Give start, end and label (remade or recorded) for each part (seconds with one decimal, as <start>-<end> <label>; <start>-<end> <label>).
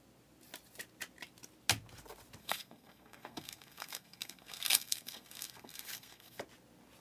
0.0-2.4 recorded; 2.4-6.4 remade; 6.4-7.0 recorded